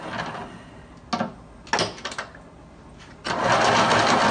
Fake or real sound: real